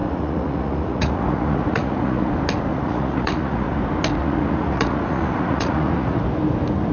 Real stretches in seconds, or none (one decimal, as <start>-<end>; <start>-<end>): 2.3-2.7; 3.8-4.2; 6.2-6.9